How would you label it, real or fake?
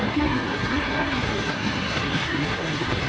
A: fake